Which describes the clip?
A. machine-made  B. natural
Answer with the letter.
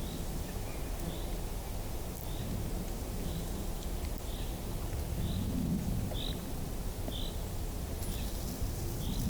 B